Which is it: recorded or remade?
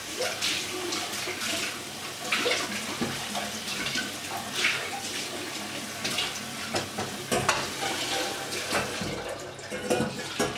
recorded